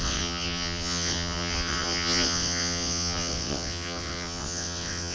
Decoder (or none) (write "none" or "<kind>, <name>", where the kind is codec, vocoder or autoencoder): vocoder, WaveNeXt